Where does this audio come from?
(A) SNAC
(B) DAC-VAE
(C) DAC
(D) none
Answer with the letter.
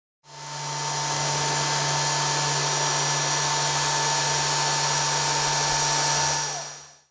D